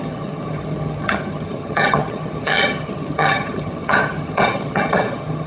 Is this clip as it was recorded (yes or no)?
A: no